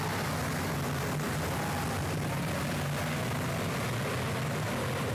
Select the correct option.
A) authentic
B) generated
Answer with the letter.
A